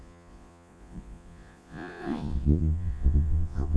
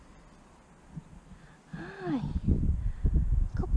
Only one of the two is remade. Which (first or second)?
first